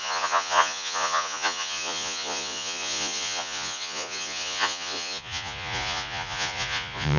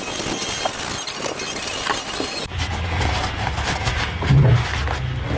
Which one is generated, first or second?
first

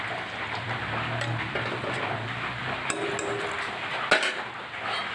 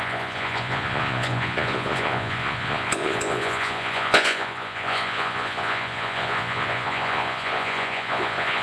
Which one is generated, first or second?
second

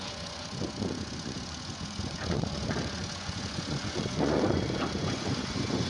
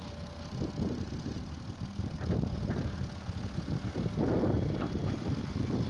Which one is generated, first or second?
first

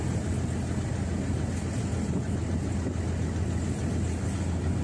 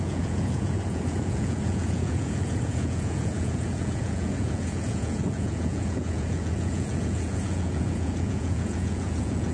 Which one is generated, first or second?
second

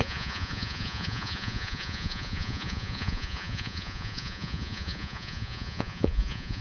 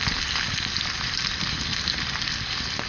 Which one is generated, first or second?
first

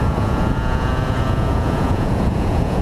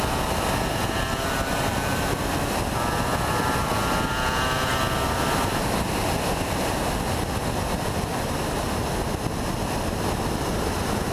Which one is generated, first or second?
first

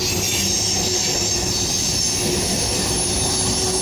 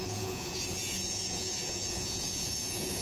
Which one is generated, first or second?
second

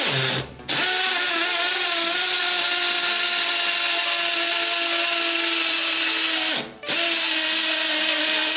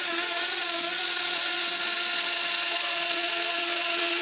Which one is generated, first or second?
second